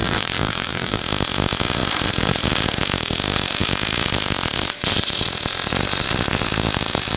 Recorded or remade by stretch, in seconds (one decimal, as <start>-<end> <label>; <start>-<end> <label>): 0.0-1.0 remade; 1.0-7.2 recorded